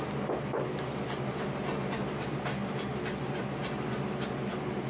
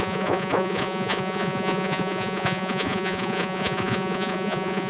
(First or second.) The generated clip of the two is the second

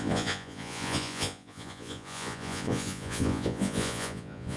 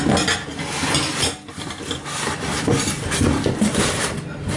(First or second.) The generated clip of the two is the first